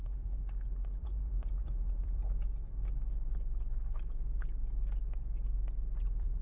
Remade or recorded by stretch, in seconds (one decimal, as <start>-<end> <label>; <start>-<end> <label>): 0.0-0.4 remade; 0.4-1.0 recorded; 1.0-2.2 remade; 2.2-6.0 recorded; 6.0-6.4 remade